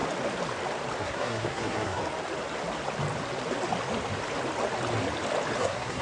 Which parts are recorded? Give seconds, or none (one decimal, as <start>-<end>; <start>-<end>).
0.0-1.0; 2.0-5.6

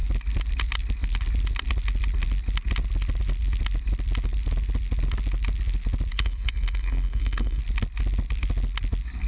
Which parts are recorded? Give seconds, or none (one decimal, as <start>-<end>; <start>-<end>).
0.0-6.1; 7.6-9.3

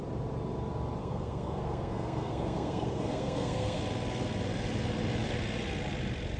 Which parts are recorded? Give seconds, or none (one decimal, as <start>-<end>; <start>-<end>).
0.0-1.0; 3.8-6.4

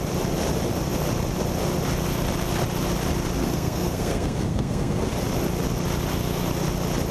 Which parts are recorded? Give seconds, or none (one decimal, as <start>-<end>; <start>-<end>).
0.0-3.4; 5.0-7.1

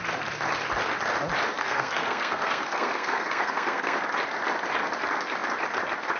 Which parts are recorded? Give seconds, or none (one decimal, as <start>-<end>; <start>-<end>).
0.0-1.6; 4.0-6.2